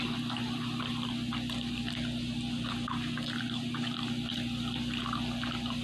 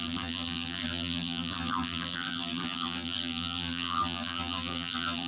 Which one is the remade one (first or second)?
second